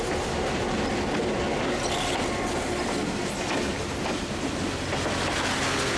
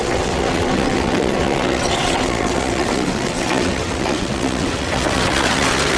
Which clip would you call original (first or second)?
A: first